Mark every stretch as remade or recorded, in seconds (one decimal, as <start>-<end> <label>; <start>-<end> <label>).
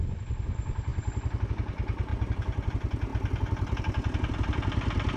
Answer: 0.0-5.2 recorded